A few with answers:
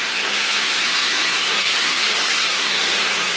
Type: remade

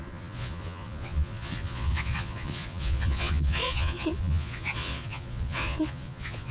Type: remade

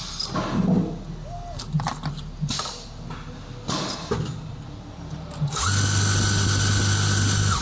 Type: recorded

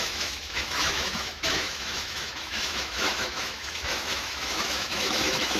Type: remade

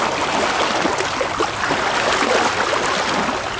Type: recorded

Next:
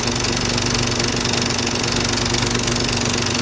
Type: recorded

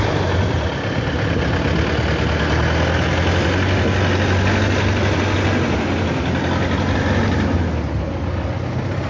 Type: recorded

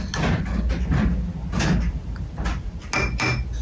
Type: recorded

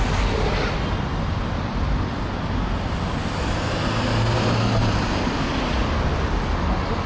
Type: recorded